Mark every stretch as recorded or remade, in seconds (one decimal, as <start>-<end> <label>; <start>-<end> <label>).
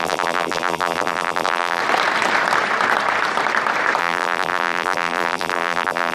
0.0-1.8 remade; 1.8-4.0 recorded; 4.0-6.1 remade